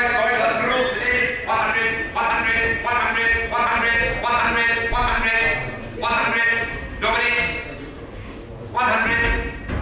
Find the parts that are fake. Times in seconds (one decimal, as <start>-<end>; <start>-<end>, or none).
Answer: none